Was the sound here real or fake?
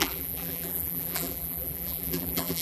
fake